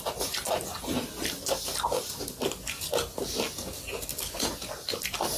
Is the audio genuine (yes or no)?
yes